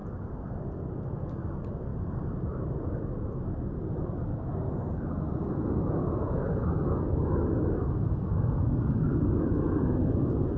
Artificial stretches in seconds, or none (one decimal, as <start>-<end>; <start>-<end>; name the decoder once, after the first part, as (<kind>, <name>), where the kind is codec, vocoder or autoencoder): 0.0-1.1 (vocoder, BigVGAN v2); 1.9-4.7